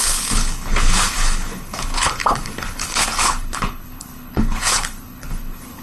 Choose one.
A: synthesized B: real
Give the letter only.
A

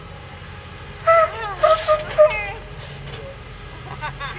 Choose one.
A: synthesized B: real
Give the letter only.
B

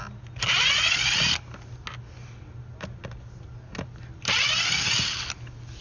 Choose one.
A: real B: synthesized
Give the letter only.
A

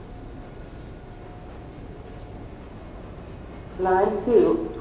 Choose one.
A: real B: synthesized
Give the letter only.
A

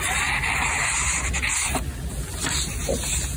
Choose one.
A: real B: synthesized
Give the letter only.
A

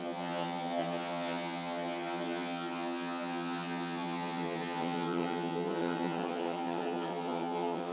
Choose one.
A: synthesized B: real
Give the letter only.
A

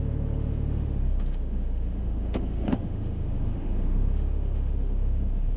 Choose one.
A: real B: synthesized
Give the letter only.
B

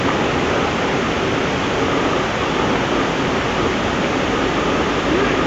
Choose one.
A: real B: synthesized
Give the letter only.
A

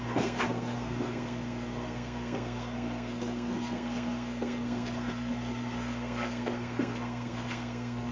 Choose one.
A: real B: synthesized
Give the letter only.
B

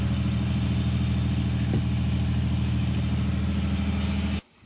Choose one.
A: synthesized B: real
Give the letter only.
B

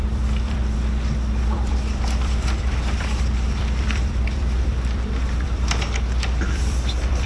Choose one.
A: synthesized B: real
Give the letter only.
A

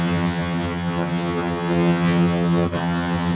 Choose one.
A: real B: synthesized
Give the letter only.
B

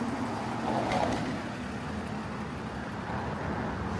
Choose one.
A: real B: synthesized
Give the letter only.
A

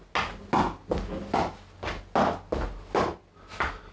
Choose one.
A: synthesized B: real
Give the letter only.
B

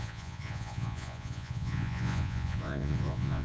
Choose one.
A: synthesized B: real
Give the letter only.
A